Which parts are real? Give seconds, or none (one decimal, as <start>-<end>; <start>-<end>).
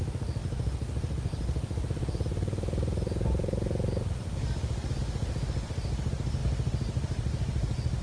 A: 0.0-8.0